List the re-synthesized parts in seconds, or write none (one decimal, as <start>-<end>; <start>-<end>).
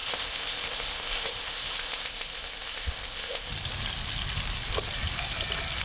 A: 0.0-3.5